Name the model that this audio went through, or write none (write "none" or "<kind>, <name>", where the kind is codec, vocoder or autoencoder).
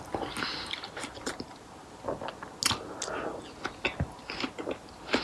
none